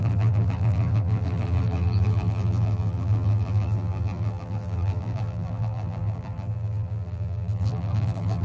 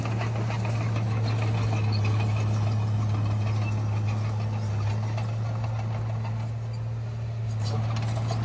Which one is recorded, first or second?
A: second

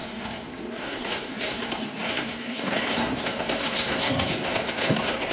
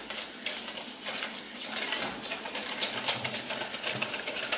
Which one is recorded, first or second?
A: second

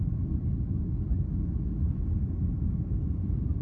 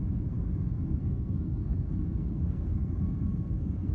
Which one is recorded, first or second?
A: first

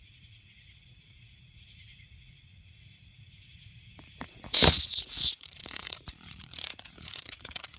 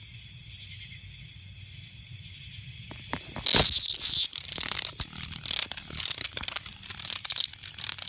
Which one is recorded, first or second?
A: second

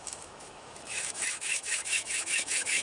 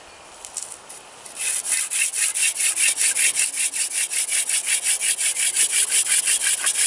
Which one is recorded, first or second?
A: second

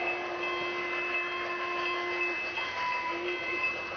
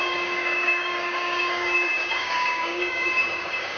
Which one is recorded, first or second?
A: first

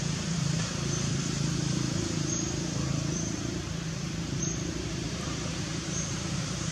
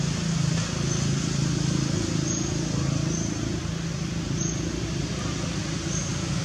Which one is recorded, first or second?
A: second